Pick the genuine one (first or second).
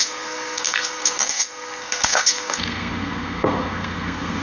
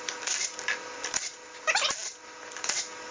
second